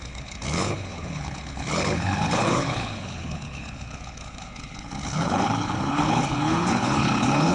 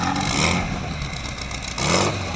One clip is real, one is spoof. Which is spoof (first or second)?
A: first